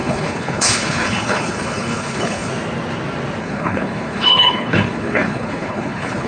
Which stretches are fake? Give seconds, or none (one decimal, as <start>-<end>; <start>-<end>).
0.0-2.5; 3.4-6.3